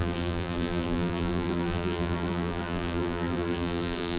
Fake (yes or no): yes